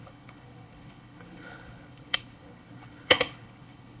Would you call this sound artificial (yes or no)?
yes